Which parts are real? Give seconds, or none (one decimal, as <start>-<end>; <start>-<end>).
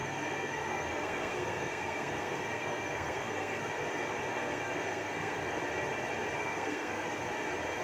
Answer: 3.7-4.3; 5.6-6.4; 7.2-7.8